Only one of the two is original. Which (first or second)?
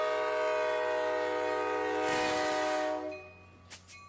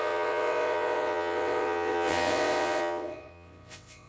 first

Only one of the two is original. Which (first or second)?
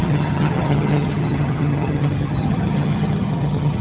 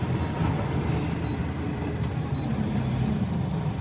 second